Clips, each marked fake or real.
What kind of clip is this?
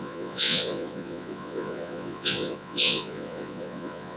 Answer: fake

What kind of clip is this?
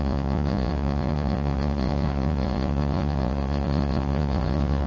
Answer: fake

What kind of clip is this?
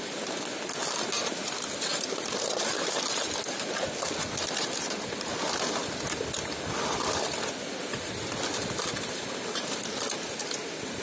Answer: real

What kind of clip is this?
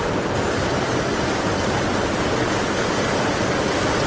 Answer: real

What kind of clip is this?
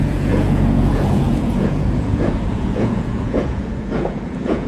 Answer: fake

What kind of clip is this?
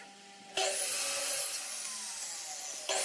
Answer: real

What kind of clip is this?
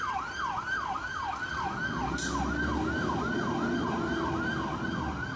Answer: real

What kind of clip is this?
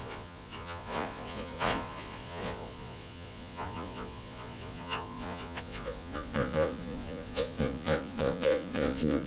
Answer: fake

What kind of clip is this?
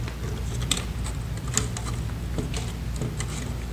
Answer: real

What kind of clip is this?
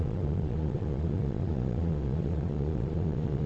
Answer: fake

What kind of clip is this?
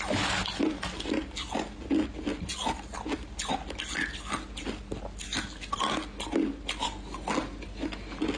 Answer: real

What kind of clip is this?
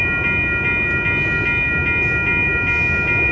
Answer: real